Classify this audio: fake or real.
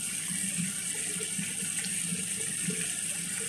real